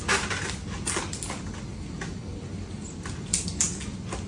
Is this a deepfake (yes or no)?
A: no